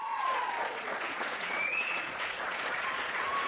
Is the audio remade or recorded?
remade